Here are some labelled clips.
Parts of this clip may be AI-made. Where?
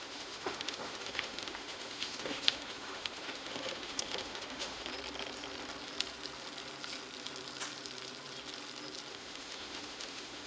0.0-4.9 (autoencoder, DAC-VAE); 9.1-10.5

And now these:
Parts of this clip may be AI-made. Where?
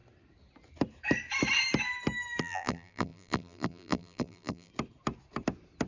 2.4-4.7 (vocoder, BigVGAN v2)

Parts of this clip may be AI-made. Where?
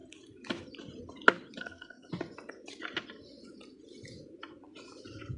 1.6-2.1 (codec, SNAC)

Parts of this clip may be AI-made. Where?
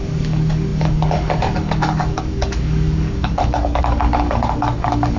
0.0-5.2 (codec, DAC)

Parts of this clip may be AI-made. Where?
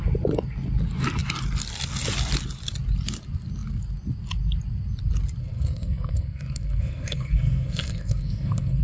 5.4-8.8 (codec, SNAC)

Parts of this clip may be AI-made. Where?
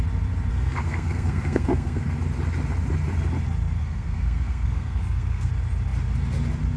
0.5-2.0 (codec, SNAC); 3.8-5.5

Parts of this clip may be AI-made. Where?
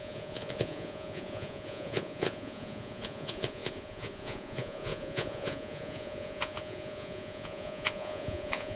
0.0-8.8 (vocoder, Vocos)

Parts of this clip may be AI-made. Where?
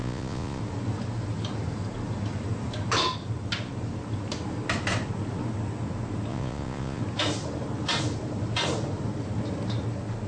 0.0-0.6 (vocoder, Vocos); 6.3-7.0